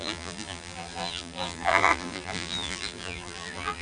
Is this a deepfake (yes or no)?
yes